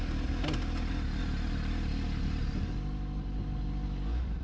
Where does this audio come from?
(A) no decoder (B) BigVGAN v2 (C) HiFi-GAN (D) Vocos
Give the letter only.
A